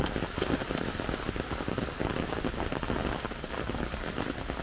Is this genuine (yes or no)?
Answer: yes